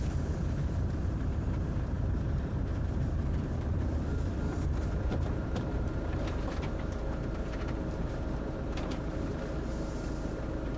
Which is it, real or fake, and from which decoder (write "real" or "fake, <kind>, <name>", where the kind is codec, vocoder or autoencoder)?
fake, vocoder, BigVGAN v2